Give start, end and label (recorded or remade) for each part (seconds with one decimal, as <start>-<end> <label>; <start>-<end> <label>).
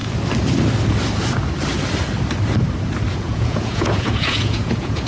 0.0-3.1 recorded; 3.1-5.1 remade